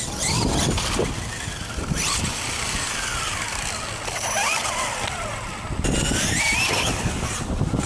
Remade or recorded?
recorded